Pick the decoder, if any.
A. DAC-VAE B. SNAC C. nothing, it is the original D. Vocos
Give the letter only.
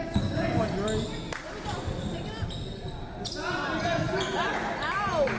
C